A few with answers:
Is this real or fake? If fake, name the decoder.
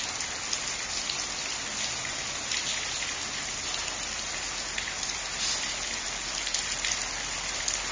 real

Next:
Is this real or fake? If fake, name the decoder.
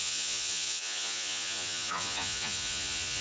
fake, vocoder, Vocos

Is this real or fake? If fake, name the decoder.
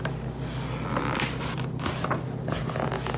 real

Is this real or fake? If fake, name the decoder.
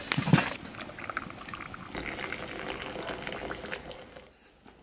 real